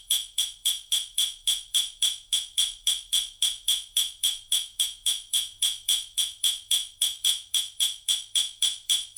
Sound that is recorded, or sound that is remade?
remade